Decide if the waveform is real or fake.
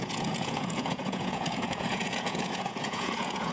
fake